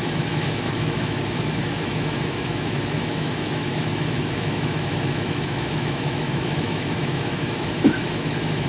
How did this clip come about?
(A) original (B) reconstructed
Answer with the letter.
B